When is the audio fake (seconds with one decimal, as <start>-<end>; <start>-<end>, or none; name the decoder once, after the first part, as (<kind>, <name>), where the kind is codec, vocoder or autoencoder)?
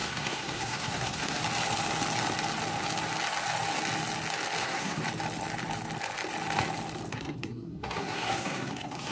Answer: 0.0-1.4 (codec, SNAC); 4.6-5.0; 7.1-9.1